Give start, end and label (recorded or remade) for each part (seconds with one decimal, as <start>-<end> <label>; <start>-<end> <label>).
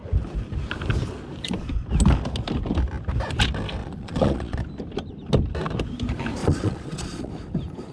0.0-3.8 recorded; 3.8-4.6 remade; 4.6-6.4 recorded; 6.4-7.3 remade; 7.3-7.9 recorded